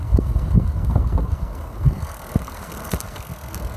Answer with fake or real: fake